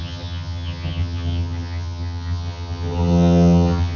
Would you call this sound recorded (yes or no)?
no